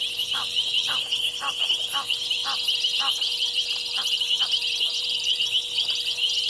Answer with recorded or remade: recorded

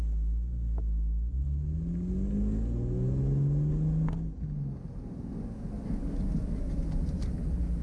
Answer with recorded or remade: recorded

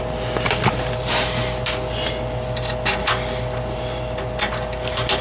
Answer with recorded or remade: recorded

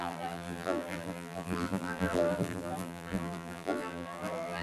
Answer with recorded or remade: remade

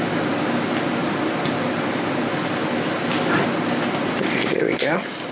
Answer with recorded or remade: recorded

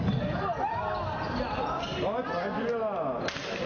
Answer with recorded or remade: recorded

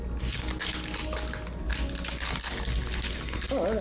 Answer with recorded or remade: recorded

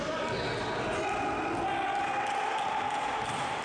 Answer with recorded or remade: recorded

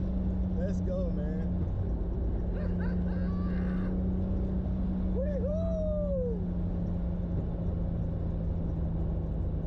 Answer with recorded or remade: recorded